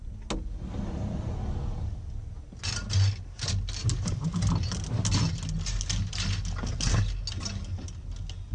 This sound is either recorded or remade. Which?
recorded